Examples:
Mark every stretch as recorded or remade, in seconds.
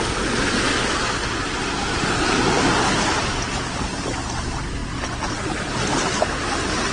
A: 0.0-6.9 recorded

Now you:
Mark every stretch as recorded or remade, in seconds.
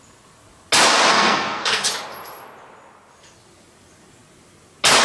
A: 0.0-1.1 recorded; 1.1-1.9 remade; 1.9-5.0 recorded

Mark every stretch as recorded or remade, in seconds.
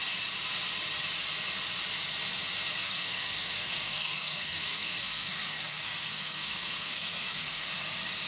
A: 0.0-2.7 recorded; 2.7-7.7 remade; 7.7-8.3 recorded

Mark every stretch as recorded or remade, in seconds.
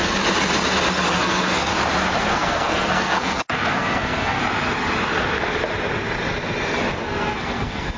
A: 0.0-1.1 recorded; 1.1-1.7 remade; 1.7-2.2 recorded; 2.2-4.4 remade; 4.4-7.0 recorded; 7.0-8.0 remade